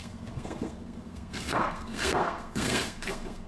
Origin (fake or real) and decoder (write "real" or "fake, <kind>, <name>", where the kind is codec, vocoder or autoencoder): fake, codec, SNAC